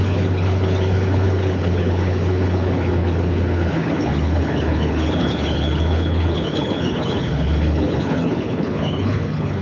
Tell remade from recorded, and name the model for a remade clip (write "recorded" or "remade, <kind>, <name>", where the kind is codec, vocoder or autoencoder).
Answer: remade, codec, HILCodec